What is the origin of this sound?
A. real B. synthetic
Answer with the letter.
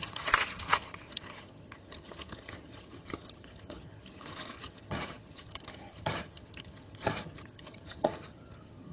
B